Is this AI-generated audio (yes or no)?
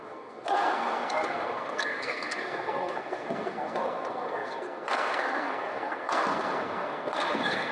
yes